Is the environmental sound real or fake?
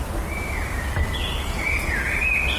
fake